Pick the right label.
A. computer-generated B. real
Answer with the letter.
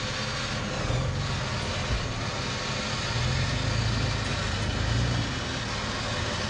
B